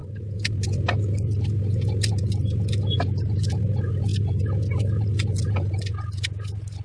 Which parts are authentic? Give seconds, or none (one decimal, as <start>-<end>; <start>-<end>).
0.0-6.8